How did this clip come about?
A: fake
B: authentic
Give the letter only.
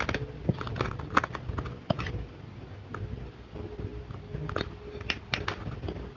B